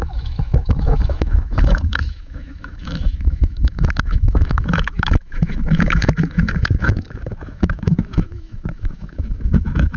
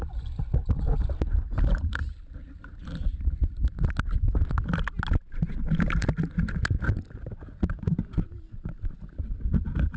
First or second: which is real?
second